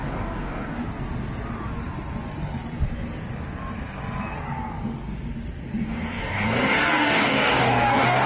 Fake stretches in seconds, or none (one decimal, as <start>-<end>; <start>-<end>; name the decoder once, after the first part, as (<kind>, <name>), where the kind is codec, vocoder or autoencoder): 0.0-0.8 (codec, DAC); 5.8-8.3